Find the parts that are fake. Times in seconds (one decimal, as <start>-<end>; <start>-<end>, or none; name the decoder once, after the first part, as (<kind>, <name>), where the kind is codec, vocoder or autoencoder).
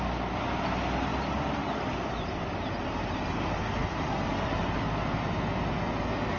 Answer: 1.1-2.4 (vocoder, BigVGAN v2); 3.8-5.7